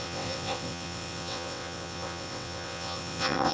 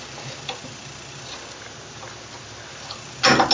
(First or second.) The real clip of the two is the second